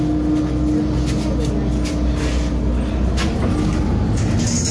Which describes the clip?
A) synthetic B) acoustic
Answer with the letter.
B